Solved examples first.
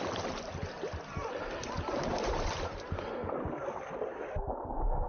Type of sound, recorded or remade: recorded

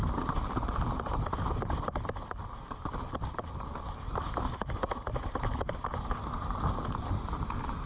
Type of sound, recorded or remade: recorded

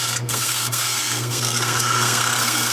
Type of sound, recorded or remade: remade